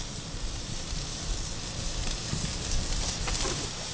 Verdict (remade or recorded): recorded